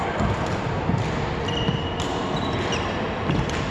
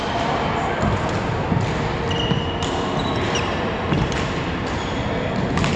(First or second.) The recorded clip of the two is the second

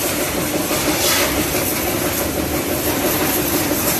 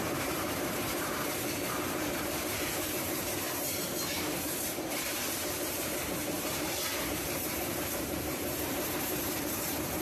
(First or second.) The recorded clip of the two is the first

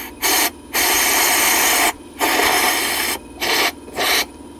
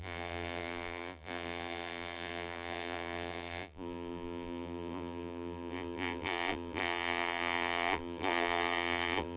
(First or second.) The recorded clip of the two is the first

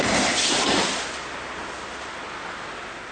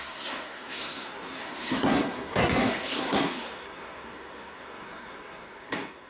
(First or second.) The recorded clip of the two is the first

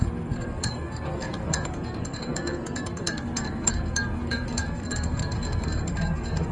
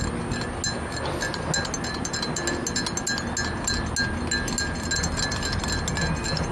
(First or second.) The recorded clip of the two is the second